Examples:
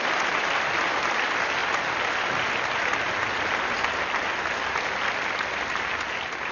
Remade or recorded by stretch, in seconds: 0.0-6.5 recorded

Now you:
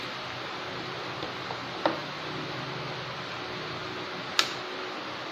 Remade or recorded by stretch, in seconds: 0.0-5.3 recorded

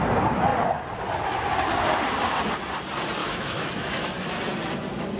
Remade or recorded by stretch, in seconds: 0.0-3.2 recorded; 3.2-4.4 remade; 4.4-5.2 recorded

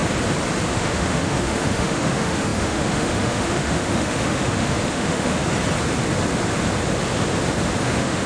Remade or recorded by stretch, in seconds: 0.0-0.7 recorded; 0.7-5.4 remade; 5.4-7.8 recorded; 7.8-8.3 remade

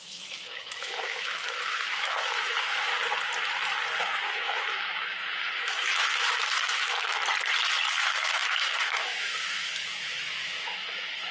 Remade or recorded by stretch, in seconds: 0.0-2.9 remade; 2.9-4.0 recorded; 4.0-7.2 remade; 7.2-7.9 recorded; 7.9-11.3 remade

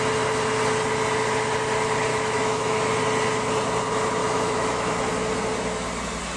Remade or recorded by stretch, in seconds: 0.0-2.1 recorded; 2.1-2.9 remade; 2.9-4.2 recorded; 4.2-5.1 remade; 5.1-6.4 recorded

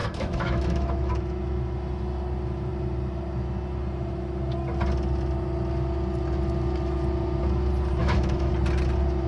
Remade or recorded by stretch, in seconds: 0.0-1.1 remade; 1.1-8.0 recorded; 8.0-8.5 remade; 8.5-9.3 recorded